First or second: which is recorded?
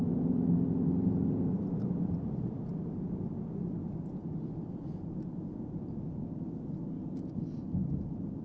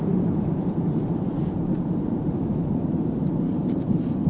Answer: first